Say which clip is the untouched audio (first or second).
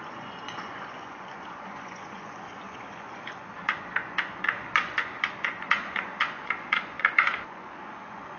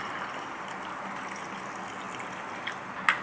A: second